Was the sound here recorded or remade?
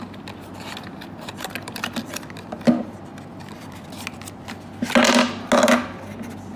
recorded